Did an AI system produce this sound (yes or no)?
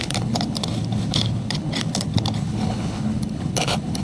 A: yes